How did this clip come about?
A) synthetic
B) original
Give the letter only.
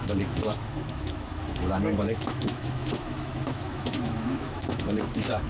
A